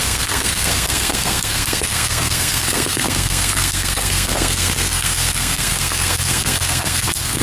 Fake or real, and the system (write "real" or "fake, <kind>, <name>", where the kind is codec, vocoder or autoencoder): fake, codec, SNAC